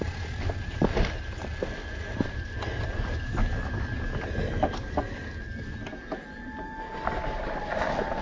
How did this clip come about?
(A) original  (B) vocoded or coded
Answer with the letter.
A